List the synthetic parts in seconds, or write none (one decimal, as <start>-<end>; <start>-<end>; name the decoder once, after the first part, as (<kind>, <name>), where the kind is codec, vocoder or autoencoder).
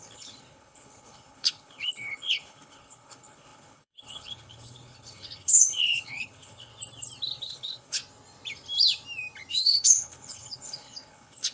0.0-6.7 (codec, HILCodec); 7.4-8.0; 9.5-11.5